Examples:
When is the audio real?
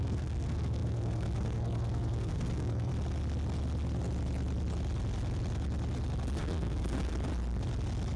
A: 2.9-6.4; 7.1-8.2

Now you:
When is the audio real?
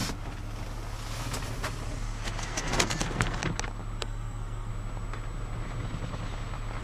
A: 0.0-2.4; 3.4-4.0; 4.7-6.8